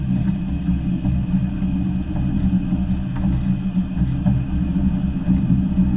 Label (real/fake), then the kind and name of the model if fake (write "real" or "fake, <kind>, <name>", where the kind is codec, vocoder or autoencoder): real